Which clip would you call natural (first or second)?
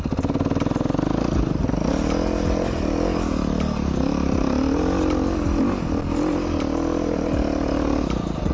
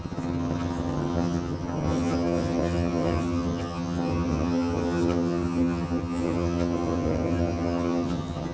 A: first